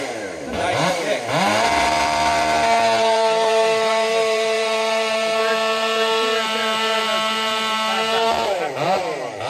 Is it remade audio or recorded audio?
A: remade